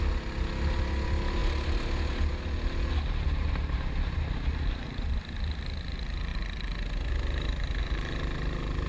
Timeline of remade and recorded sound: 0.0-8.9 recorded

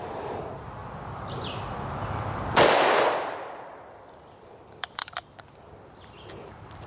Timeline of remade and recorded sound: 0.0-6.9 recorded